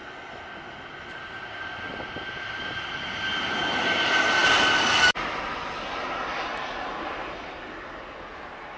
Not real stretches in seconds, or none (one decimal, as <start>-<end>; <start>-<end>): none